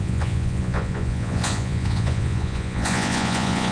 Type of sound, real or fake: fake